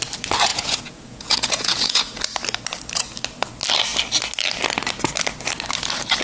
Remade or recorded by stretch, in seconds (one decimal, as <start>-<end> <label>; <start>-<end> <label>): 0.0-0.5 recorded; 0.5-2.2 remade; 2.2-6.2 recorded